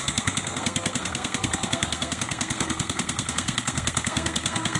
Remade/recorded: remade